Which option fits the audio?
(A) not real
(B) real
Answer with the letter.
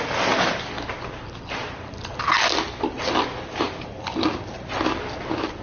B